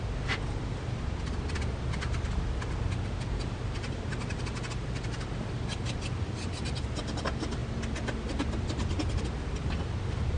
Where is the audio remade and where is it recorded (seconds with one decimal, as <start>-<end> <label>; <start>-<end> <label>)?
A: 0.0-10.4 recorded